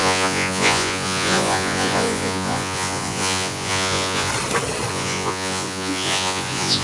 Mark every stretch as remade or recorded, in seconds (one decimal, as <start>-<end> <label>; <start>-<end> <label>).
0.0-4.3 remade; 4.3-4.9 recorded; 4.9-6.8 remade